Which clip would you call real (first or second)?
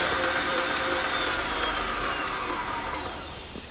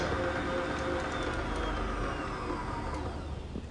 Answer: second